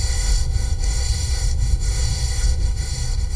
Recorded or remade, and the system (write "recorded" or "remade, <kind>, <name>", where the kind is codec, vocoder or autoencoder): remade, codec, SNAC